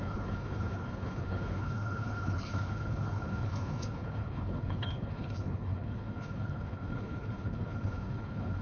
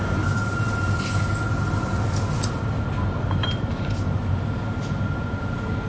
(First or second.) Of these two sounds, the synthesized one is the first